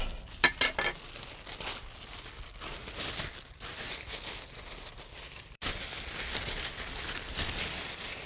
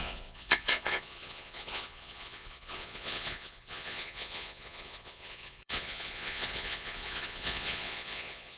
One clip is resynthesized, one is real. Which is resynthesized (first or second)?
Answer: second